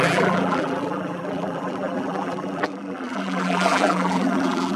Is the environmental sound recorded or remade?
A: remade